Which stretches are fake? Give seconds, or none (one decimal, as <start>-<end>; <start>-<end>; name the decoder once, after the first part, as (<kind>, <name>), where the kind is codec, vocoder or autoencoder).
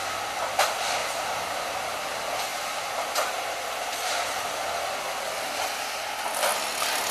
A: 1.0-1.9 (vocoder, BigVGAN v2); 2.5-4.1